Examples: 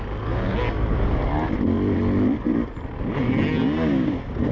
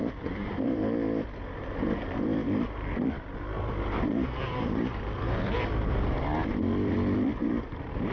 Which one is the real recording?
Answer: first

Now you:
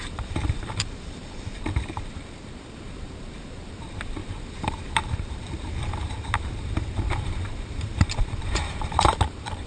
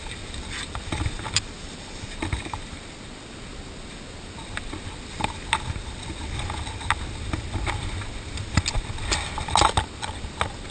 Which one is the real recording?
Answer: second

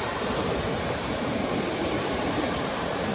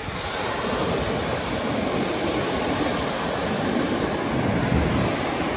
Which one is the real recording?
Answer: second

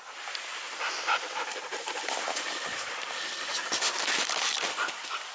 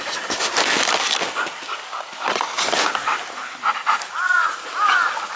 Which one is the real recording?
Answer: second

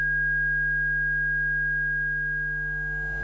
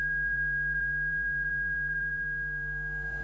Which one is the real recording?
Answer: first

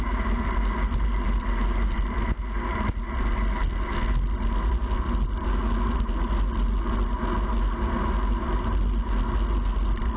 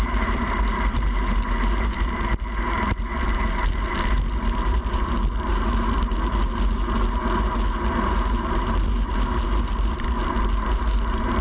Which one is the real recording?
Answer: first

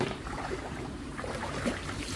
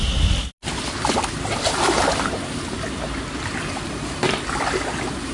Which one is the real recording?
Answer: second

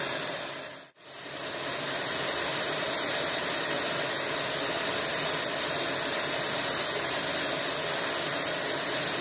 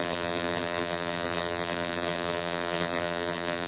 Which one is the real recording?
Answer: first